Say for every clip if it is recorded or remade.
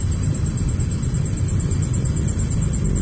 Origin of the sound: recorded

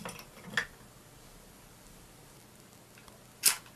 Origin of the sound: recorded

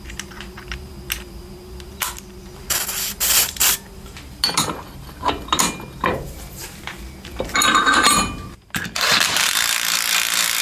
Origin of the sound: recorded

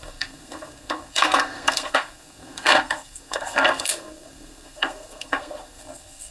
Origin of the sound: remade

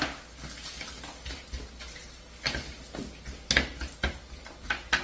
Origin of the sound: recorded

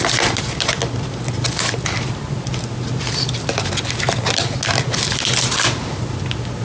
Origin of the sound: recorded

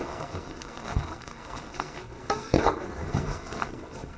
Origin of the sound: remade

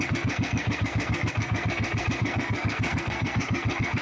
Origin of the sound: remade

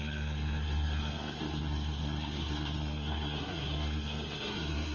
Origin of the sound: remade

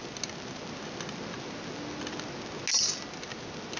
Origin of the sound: recorded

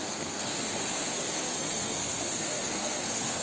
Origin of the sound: remade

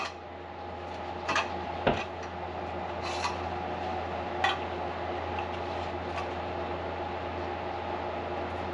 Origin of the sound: recorded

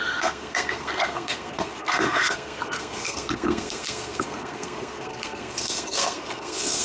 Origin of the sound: remade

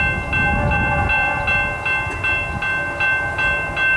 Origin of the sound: recorded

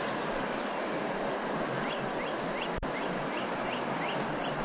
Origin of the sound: recorded